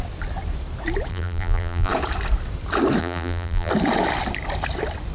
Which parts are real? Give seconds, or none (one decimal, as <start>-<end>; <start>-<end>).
0.0-1.1; 1.9-3.0; 3.7-5.1